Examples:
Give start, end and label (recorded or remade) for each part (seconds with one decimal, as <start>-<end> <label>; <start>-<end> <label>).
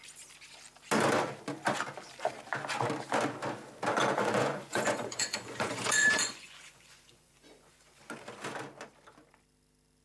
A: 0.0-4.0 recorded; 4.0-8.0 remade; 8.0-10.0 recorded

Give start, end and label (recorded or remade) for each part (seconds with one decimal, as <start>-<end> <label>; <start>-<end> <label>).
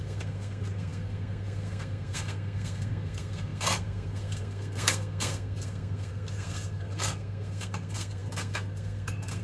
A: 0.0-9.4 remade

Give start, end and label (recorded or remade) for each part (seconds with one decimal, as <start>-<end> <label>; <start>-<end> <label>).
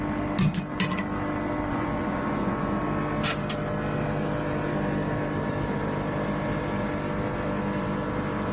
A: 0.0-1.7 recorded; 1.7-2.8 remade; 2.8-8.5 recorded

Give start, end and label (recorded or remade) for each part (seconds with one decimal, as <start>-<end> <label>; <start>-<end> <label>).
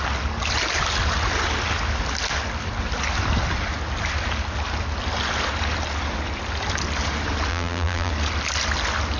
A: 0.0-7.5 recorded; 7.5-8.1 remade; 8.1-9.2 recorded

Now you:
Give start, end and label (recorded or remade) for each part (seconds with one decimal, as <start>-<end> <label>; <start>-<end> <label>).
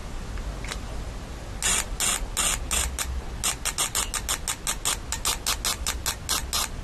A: 0.0-6.8 recorded